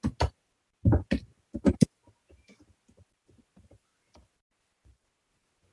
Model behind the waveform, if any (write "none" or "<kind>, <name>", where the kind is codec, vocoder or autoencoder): none